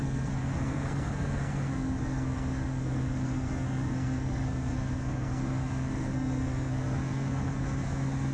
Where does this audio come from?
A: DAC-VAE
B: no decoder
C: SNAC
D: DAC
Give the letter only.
C